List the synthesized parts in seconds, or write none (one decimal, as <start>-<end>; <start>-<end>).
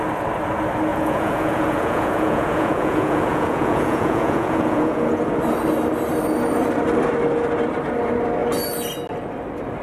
0.9-5.3